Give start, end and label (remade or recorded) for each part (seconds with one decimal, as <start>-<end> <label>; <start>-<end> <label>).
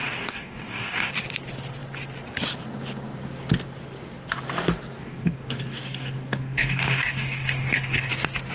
0.0-1.1 remade; 1.1-5.0 recorded; 5.0-8.1 remade; 8.1-8.5 recorded